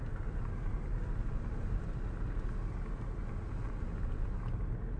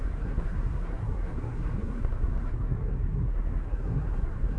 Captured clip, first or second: first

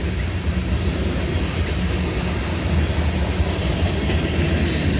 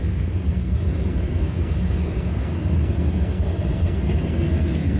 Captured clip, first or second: first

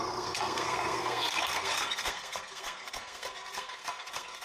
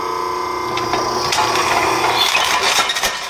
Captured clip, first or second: second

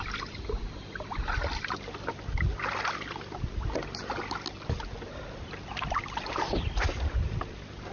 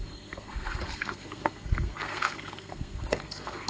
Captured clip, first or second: first